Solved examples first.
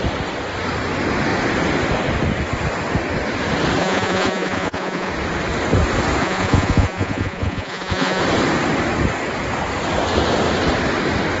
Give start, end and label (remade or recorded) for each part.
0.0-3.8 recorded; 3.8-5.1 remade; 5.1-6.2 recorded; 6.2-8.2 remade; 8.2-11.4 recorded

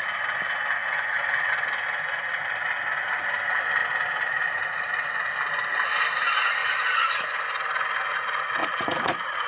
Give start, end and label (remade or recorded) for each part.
0.0-0.8 recorded; 0.8-1.5 remade; 1.5-8.6 recorded; 8.6-9.5 remade

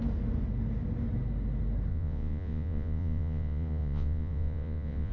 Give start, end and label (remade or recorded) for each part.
0.0-1.9 recorded; 1.9-5.1 remade

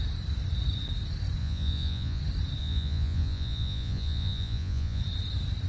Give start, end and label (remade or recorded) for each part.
0.0-1.4 recorded; 1.4-2.2 remade; 2.2-2.6 recorded; 2.6-5.0 remade; 5.0-5.7 recorded

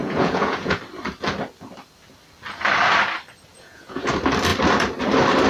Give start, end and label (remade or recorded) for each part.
0.0-0.8 remade; 0.8-3.5 recorded; 3.5-4.1 remade; 4.1-5.5 recorded

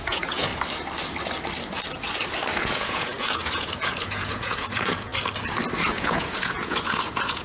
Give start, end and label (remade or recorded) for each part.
0.0-0.5 remade; 0.5-2.6 recorded; 2.6-5.1 remade; 5.1-5.9 recorded; 5.9-7.4 remade

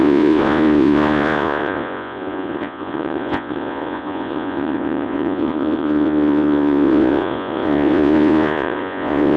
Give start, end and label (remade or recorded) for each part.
0.0-9.4 remade